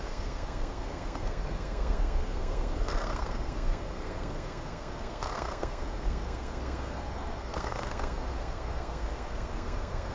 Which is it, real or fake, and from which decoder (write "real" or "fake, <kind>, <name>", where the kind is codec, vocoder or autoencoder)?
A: fake, codec, SNAC